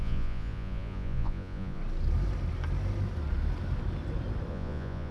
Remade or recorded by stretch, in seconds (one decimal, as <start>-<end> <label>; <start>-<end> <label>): 0.0-1.8 remade; 1.8-4.5 recorded; 4.5-5.1 remade

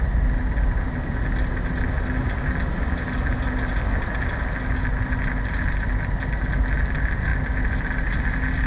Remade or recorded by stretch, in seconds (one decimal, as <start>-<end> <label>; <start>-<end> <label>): 0.0-8.7 recorded

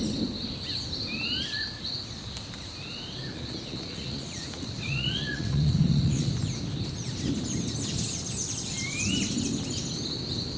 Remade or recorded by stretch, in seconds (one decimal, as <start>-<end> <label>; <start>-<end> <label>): 0.0-3.3 recorded; 3.3-6.3 remade; 6.3-10.6 recorded

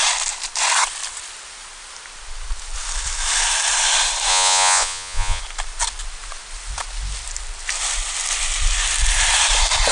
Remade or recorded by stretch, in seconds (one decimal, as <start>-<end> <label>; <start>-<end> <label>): 0.0-4.3 recorded; 4.3-5.4 remade; 5.4-9.9 recorded

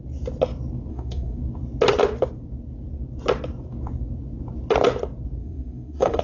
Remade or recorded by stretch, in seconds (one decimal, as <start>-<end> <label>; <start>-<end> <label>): 0.0-0.9 recorded; 0.9-1.4 remade; 1.4-5.4 recorded; 5.4-6.2 remade

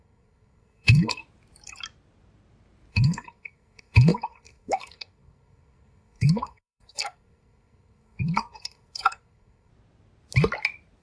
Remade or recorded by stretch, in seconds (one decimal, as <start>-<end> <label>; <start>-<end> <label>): 0.0-1.2 remade; 1.2-2.9 recorded; 2.9-9.7 remade; 9.7-11.0 recorded